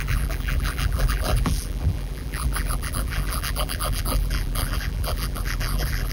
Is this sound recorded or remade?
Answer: remade